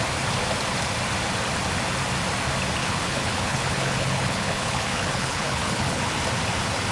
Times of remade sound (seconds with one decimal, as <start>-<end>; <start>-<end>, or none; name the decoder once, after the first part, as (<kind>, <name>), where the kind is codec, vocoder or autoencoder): 2.8-6.0 (codec, HILCodec)